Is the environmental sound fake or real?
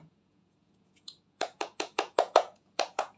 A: fake